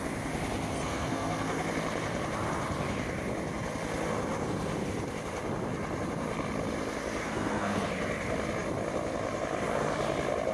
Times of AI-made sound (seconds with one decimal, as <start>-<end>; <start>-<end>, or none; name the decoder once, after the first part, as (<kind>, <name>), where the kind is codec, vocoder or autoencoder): 0.7-1.7 (codec, SNAC); 7.2-7.9